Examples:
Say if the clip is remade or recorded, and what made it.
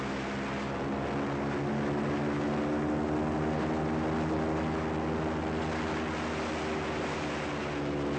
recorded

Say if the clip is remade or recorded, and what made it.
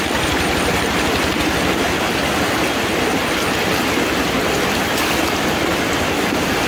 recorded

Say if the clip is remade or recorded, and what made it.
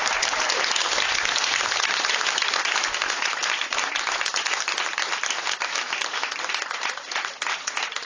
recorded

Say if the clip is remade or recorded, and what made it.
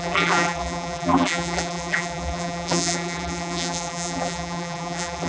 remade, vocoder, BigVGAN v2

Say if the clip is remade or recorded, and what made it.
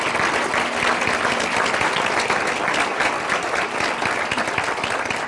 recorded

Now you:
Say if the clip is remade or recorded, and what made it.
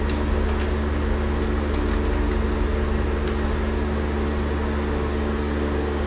recorded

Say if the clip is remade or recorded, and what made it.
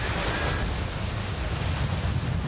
recorded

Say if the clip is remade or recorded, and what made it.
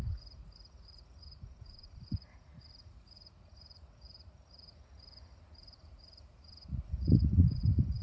remade, vocoder, Vocos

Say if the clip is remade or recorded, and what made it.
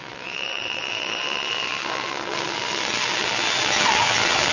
remade, vocoder, WaveNeXt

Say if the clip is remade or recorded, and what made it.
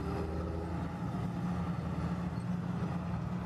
recorded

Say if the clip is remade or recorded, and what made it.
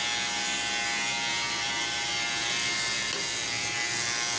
recorded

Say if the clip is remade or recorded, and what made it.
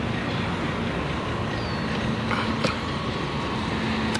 recorded